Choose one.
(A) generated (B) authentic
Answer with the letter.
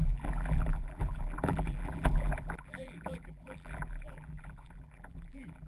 A